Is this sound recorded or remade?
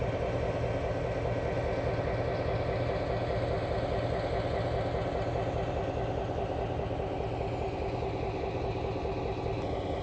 recorded